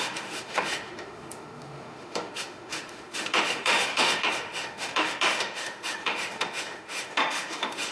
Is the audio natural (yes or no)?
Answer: no